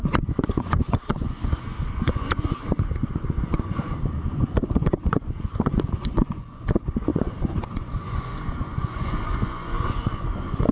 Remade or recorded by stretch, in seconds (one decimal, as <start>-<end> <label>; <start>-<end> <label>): 0.0-10.7 remade